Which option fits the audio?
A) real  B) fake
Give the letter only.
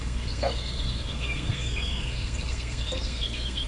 B